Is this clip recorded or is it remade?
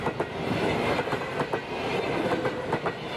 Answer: recorded